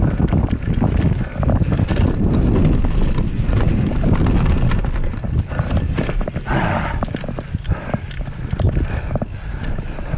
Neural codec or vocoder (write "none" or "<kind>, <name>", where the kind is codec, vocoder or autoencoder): none